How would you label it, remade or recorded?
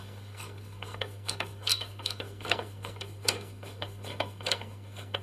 remade